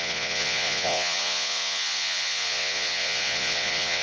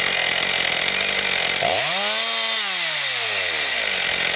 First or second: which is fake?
first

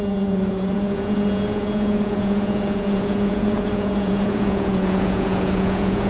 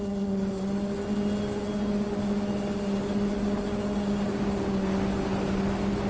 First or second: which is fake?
first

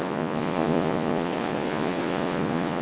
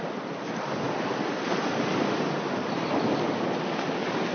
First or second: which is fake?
first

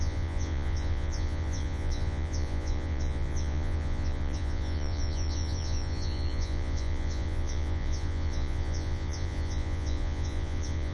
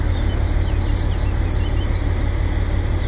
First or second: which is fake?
first